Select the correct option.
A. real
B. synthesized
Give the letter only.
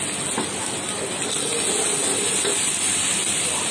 A